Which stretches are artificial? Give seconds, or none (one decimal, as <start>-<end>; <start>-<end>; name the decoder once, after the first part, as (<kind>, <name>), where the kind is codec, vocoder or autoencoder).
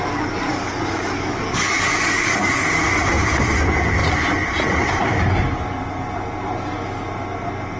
0.5-2.8 (codec, DAC)